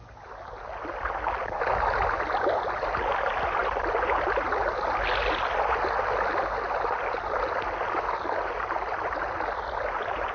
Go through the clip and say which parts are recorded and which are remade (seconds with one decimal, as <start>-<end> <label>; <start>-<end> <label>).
0.0-10.3 recorded